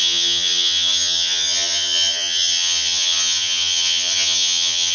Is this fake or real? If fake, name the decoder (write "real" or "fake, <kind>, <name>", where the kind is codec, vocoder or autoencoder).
fake, vocoder, HiFi-GAN